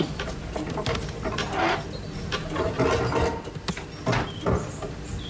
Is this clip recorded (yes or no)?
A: yes